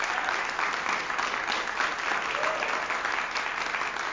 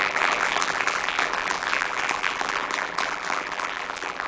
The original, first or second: first